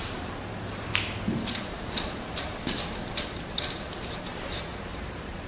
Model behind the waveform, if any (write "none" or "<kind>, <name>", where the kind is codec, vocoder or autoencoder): vocoder, BigVGAN v2